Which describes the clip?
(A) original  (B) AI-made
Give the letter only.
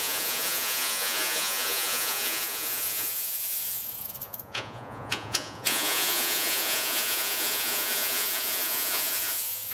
B